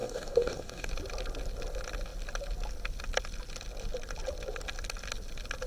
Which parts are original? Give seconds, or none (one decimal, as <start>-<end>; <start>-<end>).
0.9-5.7